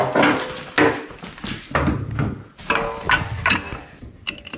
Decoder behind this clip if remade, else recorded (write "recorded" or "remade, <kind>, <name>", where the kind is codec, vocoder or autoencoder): recorded